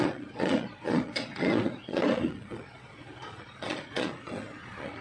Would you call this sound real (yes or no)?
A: no